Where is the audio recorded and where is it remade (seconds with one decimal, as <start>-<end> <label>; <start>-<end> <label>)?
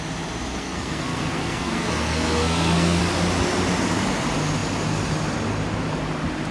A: 0.0-0.5 recorded; 0.5-3.0 remade; 3.0-6.5 recorded